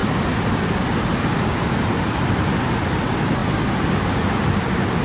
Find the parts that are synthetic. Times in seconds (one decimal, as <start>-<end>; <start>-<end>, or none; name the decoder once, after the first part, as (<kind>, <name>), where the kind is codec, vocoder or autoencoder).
0.0-2.4 (vocoder, BigVGAN v2)